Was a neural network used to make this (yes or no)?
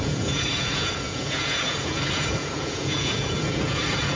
yes